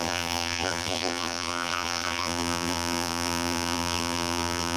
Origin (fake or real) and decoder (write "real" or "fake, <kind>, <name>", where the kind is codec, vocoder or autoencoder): fake, vocoder, BigVGAN v2